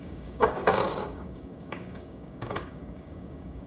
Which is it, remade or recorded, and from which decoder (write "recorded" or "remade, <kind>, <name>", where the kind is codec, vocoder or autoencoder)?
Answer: remade, codec, DAC